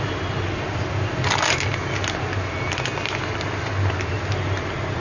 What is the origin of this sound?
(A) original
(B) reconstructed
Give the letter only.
A